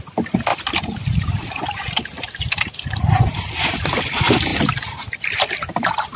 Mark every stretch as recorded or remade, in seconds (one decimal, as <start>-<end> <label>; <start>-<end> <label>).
0.0-6.2 recorded